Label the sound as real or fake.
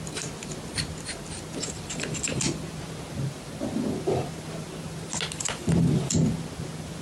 real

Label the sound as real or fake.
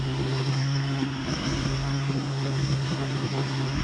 fake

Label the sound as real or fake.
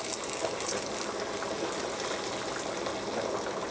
real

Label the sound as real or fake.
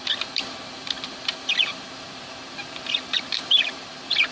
fake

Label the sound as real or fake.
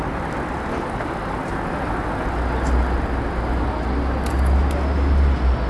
real